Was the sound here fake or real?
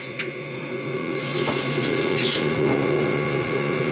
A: fake